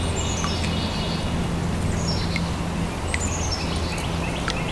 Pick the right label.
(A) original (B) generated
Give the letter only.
A